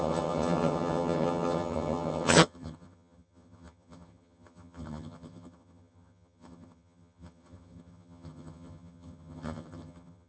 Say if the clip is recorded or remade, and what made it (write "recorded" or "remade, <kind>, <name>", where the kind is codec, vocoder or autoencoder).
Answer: remade, vocoder, HiFi-GAN